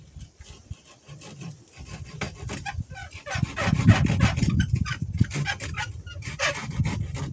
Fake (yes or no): no